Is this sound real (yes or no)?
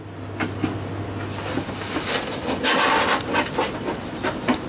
yes